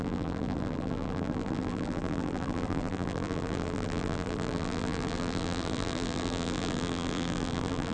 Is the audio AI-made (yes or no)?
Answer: yes